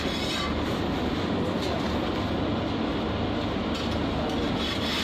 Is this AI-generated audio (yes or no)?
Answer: no